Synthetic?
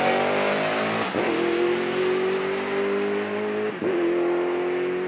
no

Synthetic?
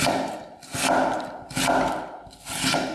no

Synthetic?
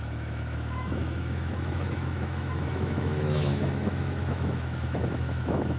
yes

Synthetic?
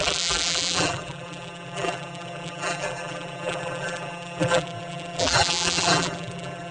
yes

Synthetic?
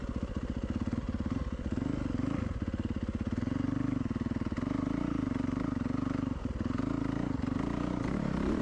no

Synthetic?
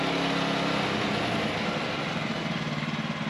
no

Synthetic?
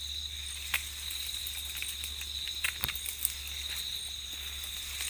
no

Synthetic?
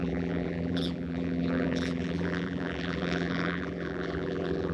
yes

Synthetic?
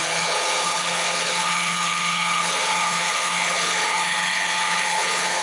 yes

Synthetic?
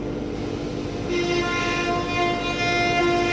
no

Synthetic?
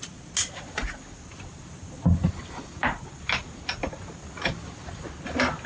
no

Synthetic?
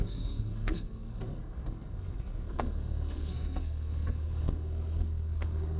yes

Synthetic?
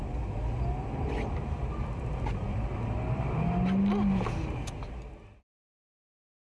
no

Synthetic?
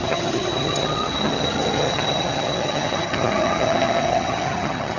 yes